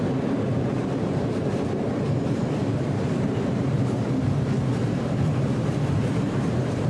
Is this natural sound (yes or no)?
no